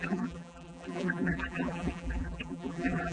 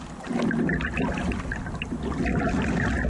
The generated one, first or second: first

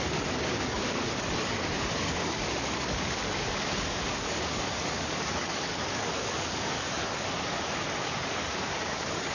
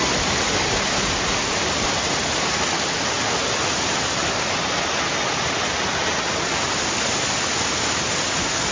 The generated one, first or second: first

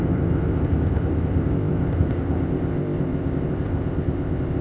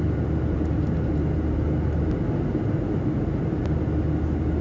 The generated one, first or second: first